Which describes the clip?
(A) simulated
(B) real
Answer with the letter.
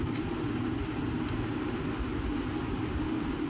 B